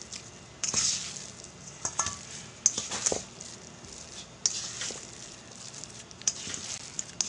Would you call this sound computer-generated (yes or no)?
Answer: no